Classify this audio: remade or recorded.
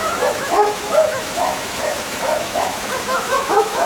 remade